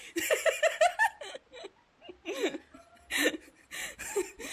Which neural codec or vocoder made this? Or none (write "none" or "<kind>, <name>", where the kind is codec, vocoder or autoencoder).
vocoder, BigVGAN v2